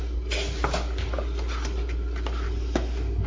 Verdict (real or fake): real